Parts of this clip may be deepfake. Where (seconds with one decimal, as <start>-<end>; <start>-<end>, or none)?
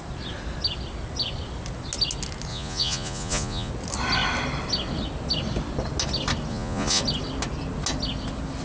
2.5-3.7; 6.5-7.0